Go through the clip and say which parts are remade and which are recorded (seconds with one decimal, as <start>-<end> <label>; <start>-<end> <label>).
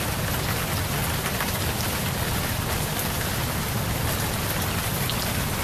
0.0-1.0 recorded; 1.0-3.9 remade; 3.9-5.6 recorded